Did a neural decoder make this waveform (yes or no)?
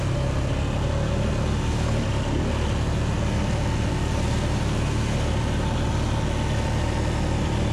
no